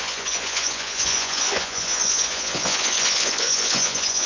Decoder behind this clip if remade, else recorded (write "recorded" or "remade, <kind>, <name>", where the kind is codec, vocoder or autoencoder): remade, vocoder, Vocos